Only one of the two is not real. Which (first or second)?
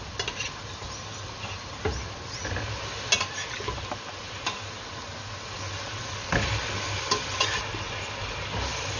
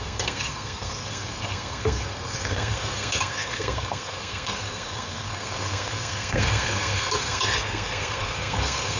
second